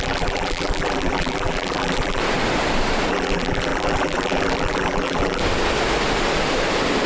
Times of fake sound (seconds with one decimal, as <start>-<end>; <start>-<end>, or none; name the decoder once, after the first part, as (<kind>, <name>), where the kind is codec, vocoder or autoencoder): 0.0-2.2 (vocoder, BigVGAN v2); 3.1-5.4